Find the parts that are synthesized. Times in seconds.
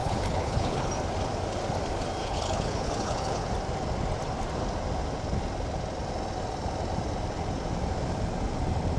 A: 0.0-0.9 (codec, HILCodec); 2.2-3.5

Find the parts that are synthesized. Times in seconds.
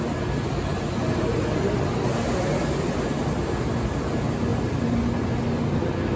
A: none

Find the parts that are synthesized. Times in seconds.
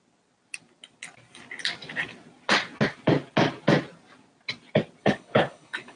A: 5.0-6.0 (codec, HILCodec)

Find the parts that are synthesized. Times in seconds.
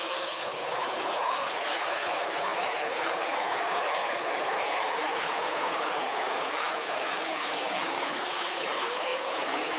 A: 0.0-9.8 (codec, HILCodec)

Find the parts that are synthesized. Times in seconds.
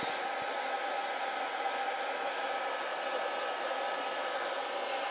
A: none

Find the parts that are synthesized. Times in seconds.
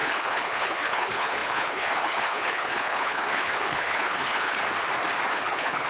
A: 0.0-4.6 (codec, HILCodec); 5.3-5.9